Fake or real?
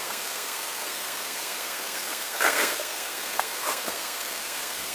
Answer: fake